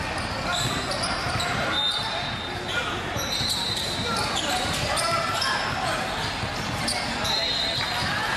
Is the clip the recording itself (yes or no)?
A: yes